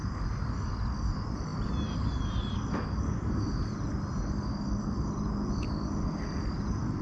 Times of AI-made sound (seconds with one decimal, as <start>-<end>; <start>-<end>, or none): none